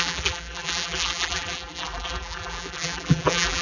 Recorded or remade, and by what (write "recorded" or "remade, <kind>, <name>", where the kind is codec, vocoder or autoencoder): remade, vocoder, BigVGAN v2